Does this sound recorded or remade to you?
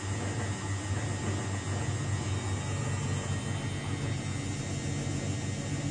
recorded